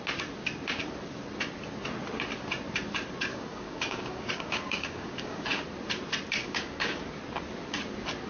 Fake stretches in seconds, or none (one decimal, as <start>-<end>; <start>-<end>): 3.3-5.6; 6.4-7.0